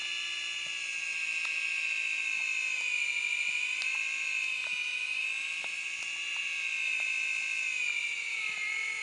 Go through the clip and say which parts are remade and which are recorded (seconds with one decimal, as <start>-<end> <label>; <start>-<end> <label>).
0.0-9.0 recorded